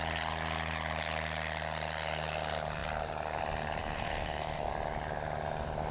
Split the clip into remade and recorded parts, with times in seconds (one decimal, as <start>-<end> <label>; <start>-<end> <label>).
0.0-3.8 recorded; 3.8-4.7 remade; 4.7-5.9 recorded